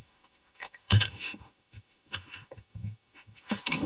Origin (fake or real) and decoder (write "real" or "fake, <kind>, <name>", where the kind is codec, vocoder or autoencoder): fake, autoencoder, DAC-VAE